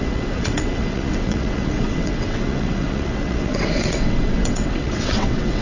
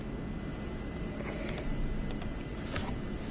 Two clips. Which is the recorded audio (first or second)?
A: second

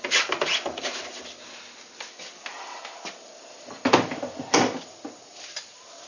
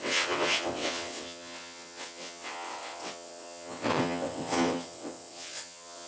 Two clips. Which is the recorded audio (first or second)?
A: first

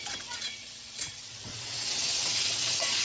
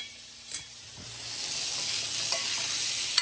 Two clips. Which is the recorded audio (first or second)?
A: second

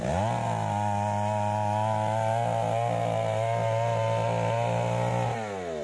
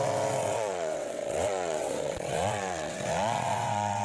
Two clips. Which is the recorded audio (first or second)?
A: first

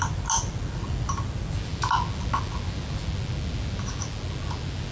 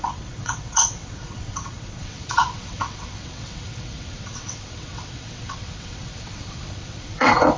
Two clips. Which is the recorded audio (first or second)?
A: first